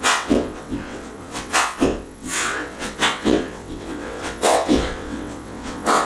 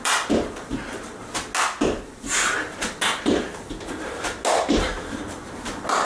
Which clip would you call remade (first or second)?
first